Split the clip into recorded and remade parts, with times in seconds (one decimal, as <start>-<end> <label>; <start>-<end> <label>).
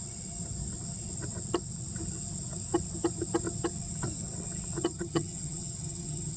0.0-4.9 recorded; 4.9-6.4 remade